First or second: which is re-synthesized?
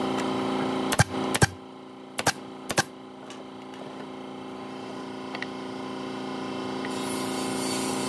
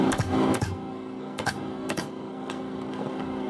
second